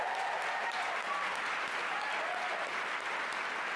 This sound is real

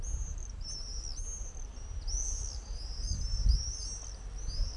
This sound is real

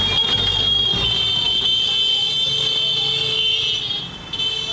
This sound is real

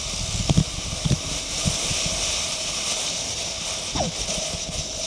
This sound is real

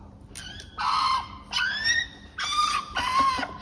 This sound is real